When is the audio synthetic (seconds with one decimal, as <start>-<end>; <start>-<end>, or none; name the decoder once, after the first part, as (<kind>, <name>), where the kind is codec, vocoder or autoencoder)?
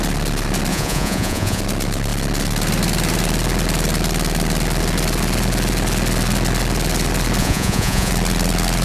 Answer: 0.7-1.6 (vocoder, Vocos); 7.4-8.1